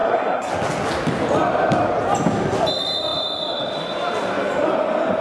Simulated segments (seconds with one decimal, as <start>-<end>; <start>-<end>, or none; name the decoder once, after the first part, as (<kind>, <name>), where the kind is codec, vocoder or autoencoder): 0.0-0.5 (codec, SNAC)